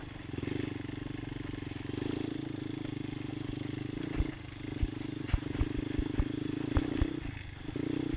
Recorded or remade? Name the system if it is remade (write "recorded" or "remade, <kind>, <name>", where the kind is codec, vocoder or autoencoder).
recorded